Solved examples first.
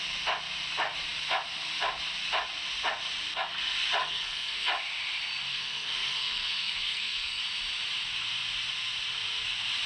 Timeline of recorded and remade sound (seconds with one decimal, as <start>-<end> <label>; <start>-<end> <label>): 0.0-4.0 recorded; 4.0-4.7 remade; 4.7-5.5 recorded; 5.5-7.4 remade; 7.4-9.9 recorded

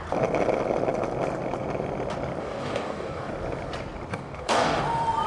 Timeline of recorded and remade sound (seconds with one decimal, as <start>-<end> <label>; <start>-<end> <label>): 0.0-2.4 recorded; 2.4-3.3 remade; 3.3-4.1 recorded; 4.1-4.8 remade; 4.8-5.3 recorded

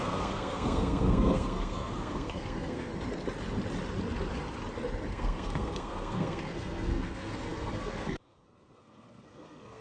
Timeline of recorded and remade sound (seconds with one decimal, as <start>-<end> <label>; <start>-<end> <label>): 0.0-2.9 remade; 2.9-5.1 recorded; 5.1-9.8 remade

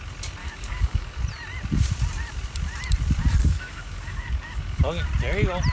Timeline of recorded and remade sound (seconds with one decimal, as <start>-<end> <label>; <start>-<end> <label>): 0.0-0.4 recorded; 0.4-1.2 remade; 1.2-3.4 recorded; 3.4-4.8 remade; 4.8-5.7 recorded

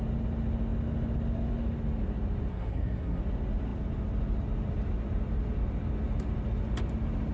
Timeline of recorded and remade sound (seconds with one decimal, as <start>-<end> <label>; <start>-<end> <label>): 0.0-2.5 recorded; 2.5-3.2 remade; 3.2-7.3 recorded